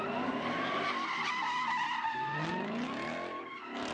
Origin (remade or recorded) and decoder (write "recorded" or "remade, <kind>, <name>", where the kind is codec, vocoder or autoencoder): recorded